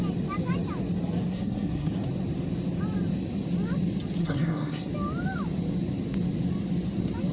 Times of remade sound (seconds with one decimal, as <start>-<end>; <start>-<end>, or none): 1.3-1.9; 4.2-4.9